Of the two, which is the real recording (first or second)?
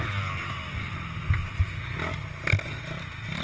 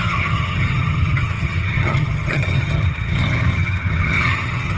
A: first